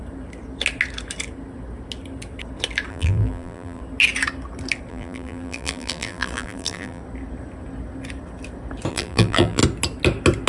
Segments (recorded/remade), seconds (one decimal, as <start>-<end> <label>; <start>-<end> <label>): 0.0-2.9 recorded; 2.9-3.8 remade; 3.8-4.9 recorded; 4.9-7.0 remade; 7.0-8.9 recorded; 8.9-9.6 remade; 9.6-10.5 recorded